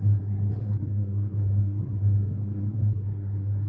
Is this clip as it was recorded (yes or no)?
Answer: no